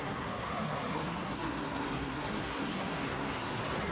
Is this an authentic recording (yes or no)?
no